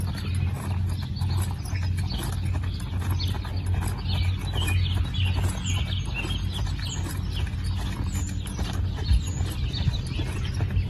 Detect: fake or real real